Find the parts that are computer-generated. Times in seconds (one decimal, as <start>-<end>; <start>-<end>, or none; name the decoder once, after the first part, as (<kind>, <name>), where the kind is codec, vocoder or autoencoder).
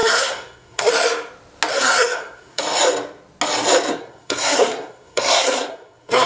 0.0-0.9 (codec, SNAC); 1.7-2.6; 3.9-6.3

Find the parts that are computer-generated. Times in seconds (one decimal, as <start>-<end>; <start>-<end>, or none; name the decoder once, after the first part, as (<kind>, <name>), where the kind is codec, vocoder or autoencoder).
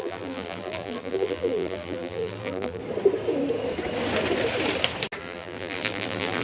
0.0-2.8 (vocoder, BigVGAN v2); 5.2-6.4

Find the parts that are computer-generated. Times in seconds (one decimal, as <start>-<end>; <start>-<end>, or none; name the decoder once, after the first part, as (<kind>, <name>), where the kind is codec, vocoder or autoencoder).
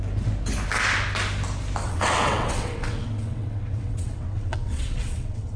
1.8-5.6 (vocoder, WaveNeXt)